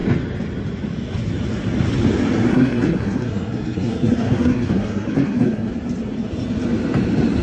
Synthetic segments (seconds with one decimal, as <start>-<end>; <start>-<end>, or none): 2.5-5.7